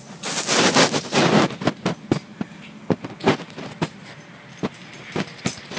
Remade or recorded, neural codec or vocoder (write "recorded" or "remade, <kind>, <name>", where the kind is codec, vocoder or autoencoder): recorded